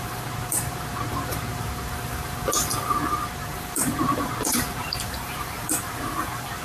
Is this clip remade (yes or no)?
yes